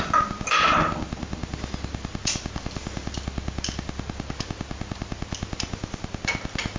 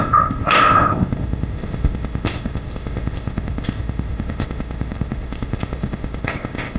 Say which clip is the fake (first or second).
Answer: second